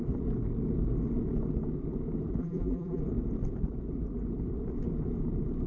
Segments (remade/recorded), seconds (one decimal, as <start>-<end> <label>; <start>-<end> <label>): 0.0-2.4 recorded; 2.4-3.0 remade; 3.0-5.7 recorded